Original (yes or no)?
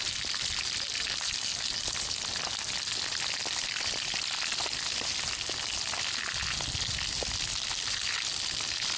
yes